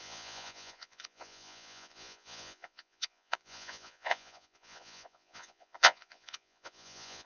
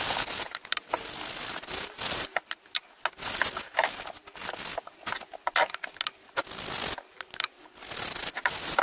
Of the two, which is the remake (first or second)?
first